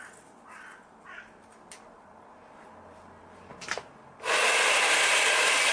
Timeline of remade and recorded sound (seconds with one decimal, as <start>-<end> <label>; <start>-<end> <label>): 0.0-5.7 recorded